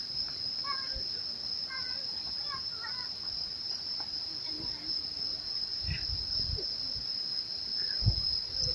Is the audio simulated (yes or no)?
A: no